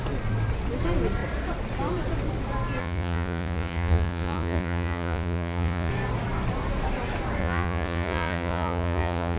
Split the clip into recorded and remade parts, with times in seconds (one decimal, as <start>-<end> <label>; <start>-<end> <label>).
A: 0.0-2.8 recorded; 2.8-5.9 remade; 5.9-7.4 recorded; 7.4-9.4 remade